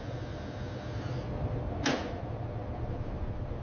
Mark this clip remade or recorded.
recorded